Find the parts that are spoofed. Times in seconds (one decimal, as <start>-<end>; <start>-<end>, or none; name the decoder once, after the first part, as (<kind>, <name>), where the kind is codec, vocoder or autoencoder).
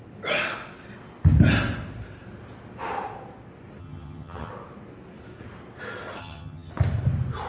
3.8-4.5 (vocoder, HiFi-GAN); 6.2-6.7